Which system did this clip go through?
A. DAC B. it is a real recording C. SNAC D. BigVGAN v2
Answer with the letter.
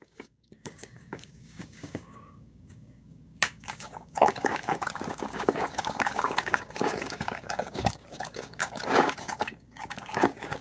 A